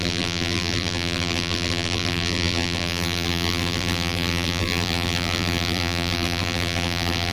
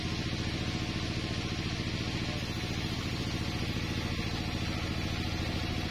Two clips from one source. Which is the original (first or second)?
second